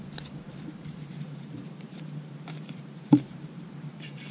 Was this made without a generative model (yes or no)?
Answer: no